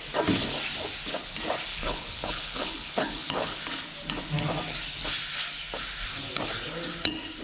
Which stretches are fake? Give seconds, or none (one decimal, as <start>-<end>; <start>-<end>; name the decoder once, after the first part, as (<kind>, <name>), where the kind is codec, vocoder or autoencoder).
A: 1.7-3.6 (codec, HILCodec)